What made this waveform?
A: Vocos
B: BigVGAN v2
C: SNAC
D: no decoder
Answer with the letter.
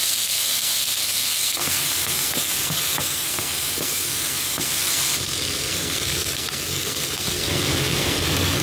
C